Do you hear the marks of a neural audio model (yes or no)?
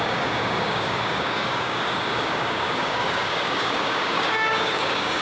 yes